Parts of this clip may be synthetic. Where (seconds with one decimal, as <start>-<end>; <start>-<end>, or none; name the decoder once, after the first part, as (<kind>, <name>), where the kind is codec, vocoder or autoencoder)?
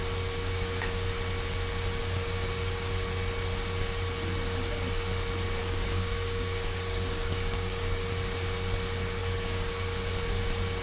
0.4-1.1 (codec, DAC); 2.0-2.9; 5.6-8.1; 9.2-10.1